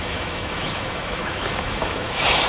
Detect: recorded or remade remade